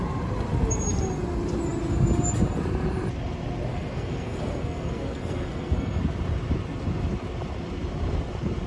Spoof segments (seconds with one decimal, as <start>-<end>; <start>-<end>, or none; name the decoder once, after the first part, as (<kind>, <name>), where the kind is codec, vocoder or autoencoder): 3.7-6.0 (codec, SNAC)